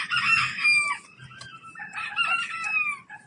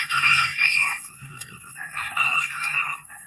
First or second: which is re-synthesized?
second